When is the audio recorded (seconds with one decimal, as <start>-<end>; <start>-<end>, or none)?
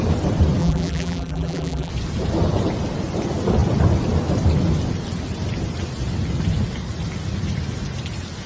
0.0-0.6; 1.9-8.5